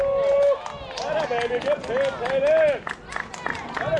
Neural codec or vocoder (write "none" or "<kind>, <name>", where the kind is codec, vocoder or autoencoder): none